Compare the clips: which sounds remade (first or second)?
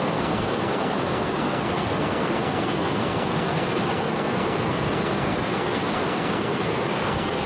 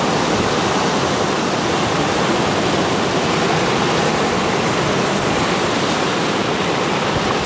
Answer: first